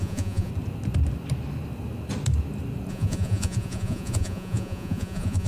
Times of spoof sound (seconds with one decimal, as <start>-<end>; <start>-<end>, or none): 0.0-0.5; 2.9-5.5